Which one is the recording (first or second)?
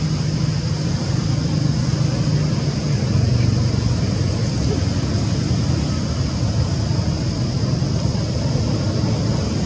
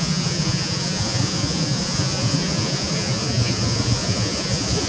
first